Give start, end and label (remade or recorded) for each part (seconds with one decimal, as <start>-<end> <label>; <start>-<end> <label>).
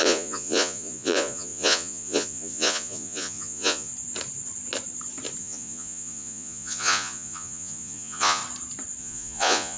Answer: 0.0-3.9 remade; 3.9-5.4 recorded; 5.4-8.4 remade; 8.4-9.0 recorded; 9.0-9.8 remade